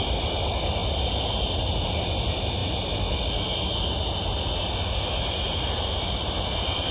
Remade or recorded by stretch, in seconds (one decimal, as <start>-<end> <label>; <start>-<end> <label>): 0.0-6.9 recorded